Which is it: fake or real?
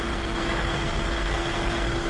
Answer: fake